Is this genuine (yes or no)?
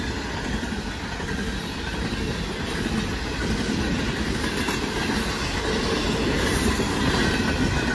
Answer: yes